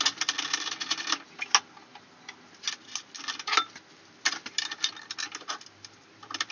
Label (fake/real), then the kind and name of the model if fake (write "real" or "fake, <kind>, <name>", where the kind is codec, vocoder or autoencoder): real